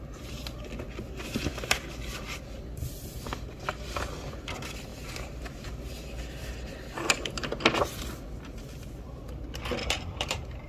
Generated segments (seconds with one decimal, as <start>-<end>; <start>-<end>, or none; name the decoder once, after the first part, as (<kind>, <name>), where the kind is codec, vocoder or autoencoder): 4.9-5.8 (vocoder, BigVGAN v2); 9.8-10.7

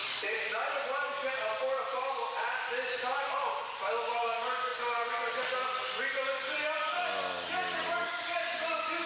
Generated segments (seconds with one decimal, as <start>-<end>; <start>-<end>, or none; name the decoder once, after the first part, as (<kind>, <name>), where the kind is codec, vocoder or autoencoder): 0.0-3.6 (vocoder, BigVGAN v2)

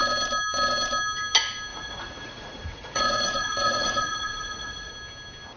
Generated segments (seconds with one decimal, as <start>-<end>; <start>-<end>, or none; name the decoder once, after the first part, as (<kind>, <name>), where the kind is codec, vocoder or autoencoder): 1.7-4.9 (vocoder, Vocos)

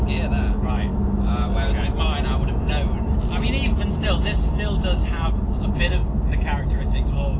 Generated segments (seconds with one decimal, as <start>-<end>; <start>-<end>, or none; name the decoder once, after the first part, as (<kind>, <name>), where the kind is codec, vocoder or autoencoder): 5.0-5.6 (vocoder, BigVGAN v2)

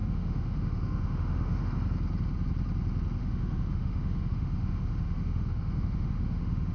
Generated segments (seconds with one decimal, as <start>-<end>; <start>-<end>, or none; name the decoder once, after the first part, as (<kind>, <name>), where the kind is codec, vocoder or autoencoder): 0.0-1.7 (autoencoder, DAC-VAE); 3.2-6.7

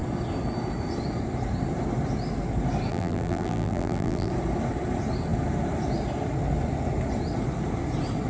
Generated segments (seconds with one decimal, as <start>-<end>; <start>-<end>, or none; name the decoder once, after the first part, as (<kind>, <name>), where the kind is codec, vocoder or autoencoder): 2.9-4.3 (vocoder, BigVGAN v2)

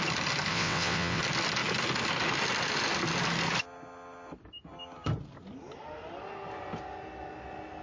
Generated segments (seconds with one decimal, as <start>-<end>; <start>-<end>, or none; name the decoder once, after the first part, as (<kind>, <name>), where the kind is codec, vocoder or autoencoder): 0.5-1.2 (vocoder, WaveNeXt)